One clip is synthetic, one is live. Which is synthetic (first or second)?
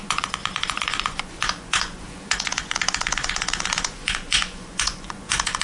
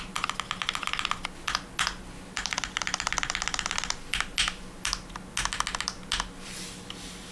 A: first